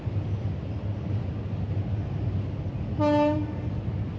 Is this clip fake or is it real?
real